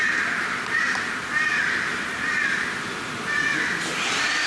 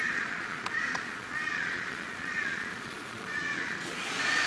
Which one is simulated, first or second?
second